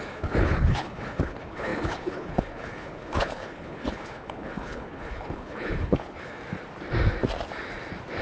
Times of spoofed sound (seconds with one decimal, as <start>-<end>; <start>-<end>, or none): 0.0-6.4